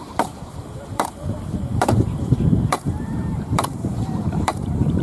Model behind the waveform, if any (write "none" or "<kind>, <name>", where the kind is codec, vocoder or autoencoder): vocoder, BigVGAN v2